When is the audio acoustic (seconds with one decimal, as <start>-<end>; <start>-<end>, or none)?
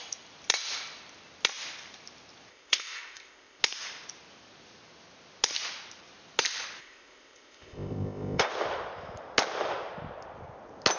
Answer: 0.0-2.5; 3.6-6.8; 8.5-11.0